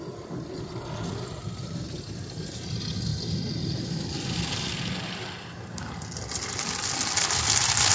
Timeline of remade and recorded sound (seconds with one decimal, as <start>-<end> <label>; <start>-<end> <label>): 0.0-7.9 recorded